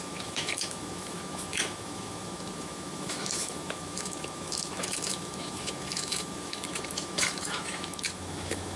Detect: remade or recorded remade